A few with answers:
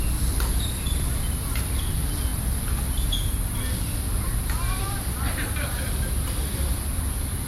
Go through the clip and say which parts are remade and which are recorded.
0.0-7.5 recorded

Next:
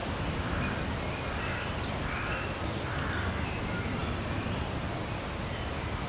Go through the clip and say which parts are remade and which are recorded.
0.0-6.1 recorded

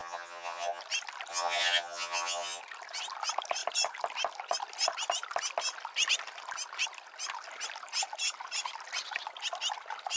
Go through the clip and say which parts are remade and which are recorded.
0.0-0.8 remade; 0.8-1.3 recorded; 1.3-2.6 remade; 2.6-10.2 recorded

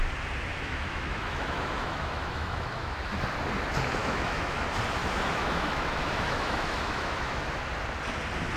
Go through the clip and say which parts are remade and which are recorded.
0.0-0.5 recorded; 0.5-3.0 remade; 3.0-4.0 recorded; 4.0-4.6 remade; 4.6-5.0 recorded; 5.0-7.4 remade; 7.4-8.6 recorded